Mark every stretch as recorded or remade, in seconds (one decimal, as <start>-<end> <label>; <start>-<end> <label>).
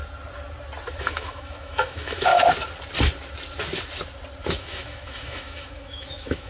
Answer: 0.0-1.0 recorded; 1.0-2.3 remade; 2.3-4.4 recorded; 4.4-6.5 remade